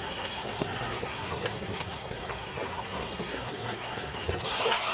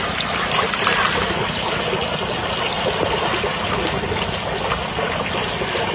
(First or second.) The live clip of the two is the second